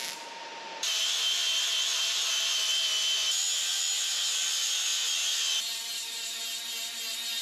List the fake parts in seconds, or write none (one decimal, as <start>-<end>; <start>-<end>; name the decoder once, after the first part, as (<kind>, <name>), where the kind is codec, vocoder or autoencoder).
0.0-2.7 (vocoder, BigVGAN v2); 4.1-4.9; 5.6-7.4